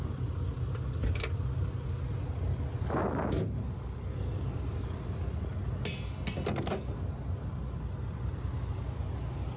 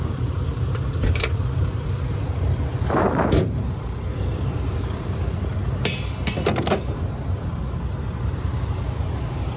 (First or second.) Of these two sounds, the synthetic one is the second